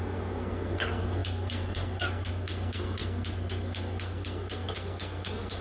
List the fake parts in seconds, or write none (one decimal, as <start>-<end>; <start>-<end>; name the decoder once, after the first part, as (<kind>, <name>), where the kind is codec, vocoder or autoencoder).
0.0-5.6 (codec, SNAC)